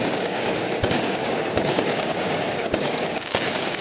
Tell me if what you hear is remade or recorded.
remade